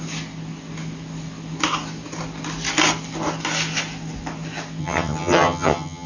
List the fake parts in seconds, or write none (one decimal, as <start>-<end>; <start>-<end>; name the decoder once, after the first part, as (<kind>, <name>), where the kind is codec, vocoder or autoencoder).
4.8-6.1 (vocoder, HiFi-GAN)